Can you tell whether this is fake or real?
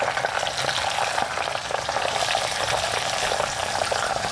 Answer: real